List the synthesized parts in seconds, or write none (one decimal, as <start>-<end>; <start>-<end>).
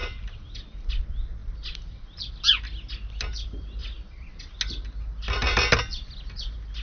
0.0-0.9; 1.4-2.3